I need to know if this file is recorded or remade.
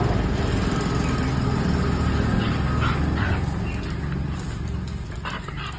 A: recorded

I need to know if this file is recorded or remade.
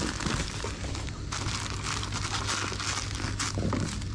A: recorded